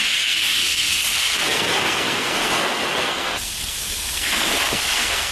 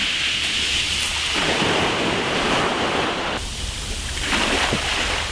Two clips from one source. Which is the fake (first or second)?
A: first